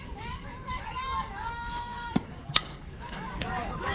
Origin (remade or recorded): remade